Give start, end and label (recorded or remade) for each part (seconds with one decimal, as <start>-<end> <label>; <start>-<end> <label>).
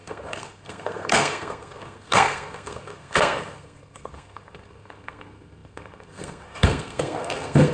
0.0-7.7 remade